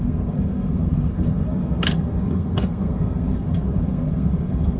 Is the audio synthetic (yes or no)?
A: yes